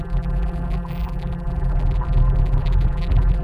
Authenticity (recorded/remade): remade